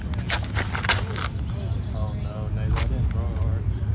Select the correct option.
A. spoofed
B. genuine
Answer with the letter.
B